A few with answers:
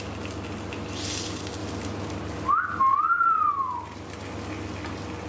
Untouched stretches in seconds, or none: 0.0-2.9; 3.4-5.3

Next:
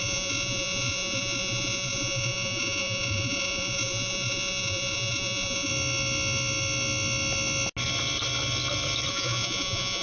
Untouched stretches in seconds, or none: 5.7-9.1

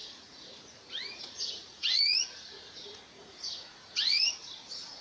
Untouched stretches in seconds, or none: none

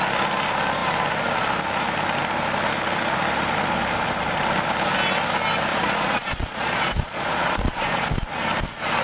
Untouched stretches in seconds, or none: 0.0-5.7; 8.1-9.0

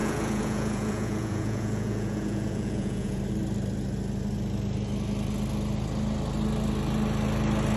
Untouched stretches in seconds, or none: 3.2-7.8

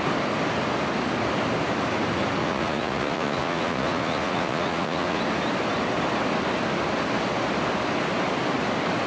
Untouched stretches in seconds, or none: 0.0-2.4; 5.2-9.1

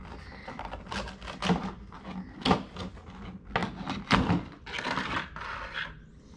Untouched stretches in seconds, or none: 0.0-6.4